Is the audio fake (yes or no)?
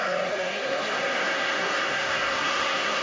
yes